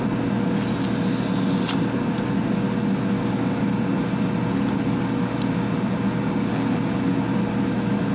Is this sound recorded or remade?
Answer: recorded